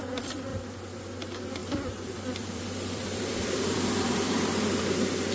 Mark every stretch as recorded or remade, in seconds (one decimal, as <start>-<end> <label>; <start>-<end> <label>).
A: 0.0-0.5 recorded; 0.5-1.0 remade; 1.0-1.6 recorded; 1.6-4.8 remade; 4.8-5.3 recorded